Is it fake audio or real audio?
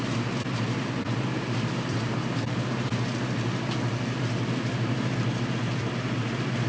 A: real